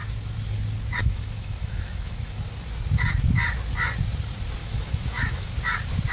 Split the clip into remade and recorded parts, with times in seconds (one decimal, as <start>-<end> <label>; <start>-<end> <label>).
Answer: 0.0-1.0 recorded; 1.0-2.3 remade; 2.3-4.6 recorded; 4.6-5.5 remade; 5.5-6.1 recorded